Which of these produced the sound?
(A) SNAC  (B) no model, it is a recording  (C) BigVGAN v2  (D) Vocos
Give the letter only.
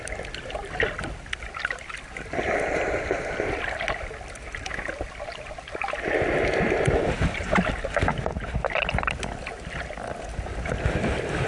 B